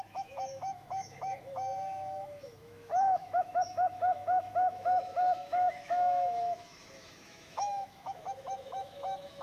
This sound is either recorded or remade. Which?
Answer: remade